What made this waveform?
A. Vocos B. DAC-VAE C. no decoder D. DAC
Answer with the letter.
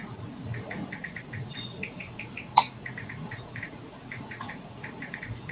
A